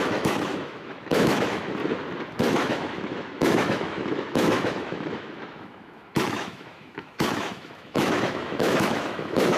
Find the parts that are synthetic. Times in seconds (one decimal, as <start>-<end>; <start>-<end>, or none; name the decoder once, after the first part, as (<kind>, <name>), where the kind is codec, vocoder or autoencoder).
0.0-1.8 (autoencoder, DAC-VAE); 2.4-9.6